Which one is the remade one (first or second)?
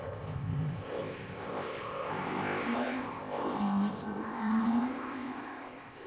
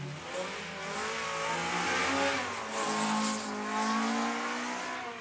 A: first